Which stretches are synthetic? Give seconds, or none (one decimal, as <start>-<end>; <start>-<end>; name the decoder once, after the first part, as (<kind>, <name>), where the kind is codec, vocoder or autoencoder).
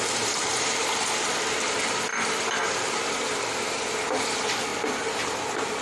0.5-1.3 (vocoder, BigVGAN v2); 2.1-3.0; 4.7-5.8